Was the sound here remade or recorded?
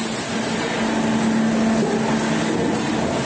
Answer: recorded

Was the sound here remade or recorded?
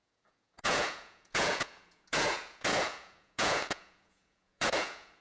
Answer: remade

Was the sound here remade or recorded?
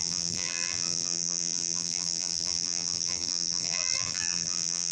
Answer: remade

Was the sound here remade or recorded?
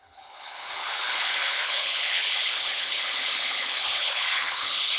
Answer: remade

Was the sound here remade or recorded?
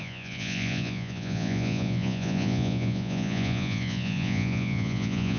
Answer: remade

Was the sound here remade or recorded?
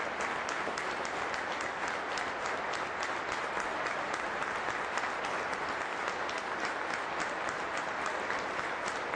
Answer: recorded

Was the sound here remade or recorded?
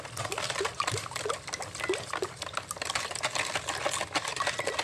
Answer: recorded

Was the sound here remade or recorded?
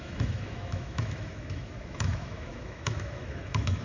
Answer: remade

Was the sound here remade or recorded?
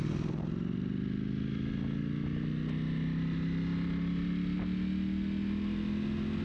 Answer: recorded